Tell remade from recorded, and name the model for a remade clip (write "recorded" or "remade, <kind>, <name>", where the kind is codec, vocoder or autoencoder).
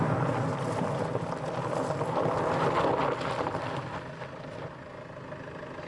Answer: recorded